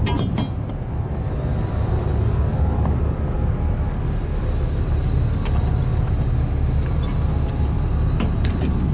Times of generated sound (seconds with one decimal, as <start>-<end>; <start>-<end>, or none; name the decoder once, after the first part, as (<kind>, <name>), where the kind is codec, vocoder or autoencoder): none